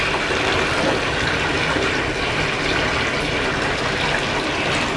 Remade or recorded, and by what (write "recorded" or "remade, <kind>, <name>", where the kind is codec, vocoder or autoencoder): recorded